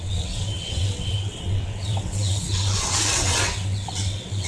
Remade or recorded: remade